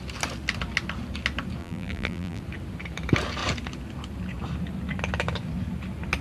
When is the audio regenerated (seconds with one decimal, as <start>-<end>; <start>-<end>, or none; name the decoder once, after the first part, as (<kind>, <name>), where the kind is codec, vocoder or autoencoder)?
1.6-2.4 (vocoder, BigVGAN v2)

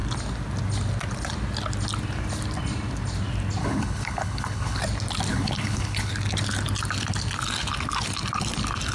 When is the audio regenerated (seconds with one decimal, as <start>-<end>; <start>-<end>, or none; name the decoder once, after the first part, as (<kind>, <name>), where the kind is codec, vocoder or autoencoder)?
3.6-4.8 (codec, HILCodec); 5.3-6.1